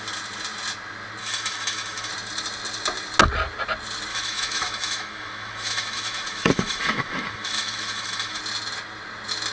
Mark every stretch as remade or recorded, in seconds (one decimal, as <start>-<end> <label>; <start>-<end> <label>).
0.0-1.2 recorded; 1.2-2.1 remade; 2.1-4.1 recorded; 4.1-8.4 remade; 8.4-9.5 recorded